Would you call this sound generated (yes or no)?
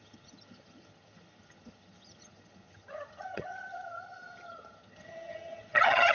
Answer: yes